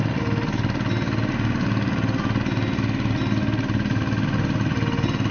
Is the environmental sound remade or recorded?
recorded